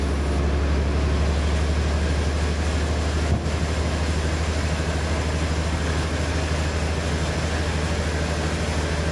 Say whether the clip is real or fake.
real